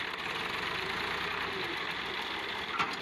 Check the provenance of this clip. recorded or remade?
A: recorded